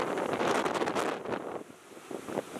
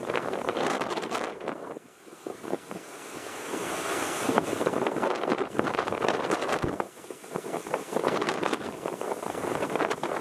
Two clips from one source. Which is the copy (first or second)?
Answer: second